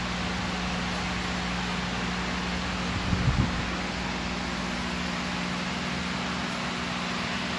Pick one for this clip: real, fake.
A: real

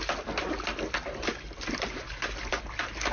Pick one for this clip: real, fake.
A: real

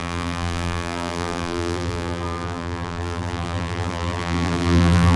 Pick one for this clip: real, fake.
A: fake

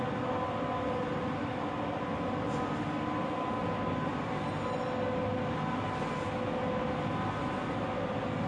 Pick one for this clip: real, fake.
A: real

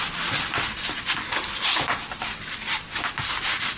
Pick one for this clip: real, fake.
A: real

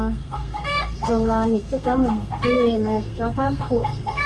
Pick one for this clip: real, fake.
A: fake